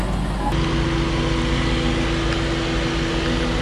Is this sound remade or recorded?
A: recorded